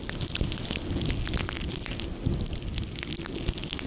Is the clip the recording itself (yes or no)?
yes